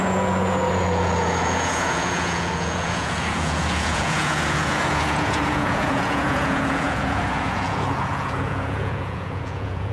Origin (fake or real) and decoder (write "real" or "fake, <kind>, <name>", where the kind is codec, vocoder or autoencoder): fake, vocoder, Vocos